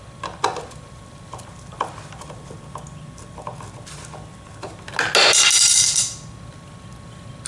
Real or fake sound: real